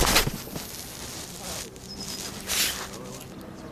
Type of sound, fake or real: real